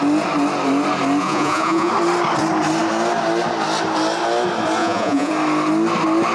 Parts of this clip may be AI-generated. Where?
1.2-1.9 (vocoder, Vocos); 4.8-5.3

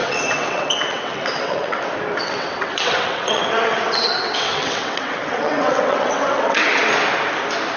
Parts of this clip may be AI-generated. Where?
0.0-1.8 (vocoder, WaveNeXt); 2.2-6.8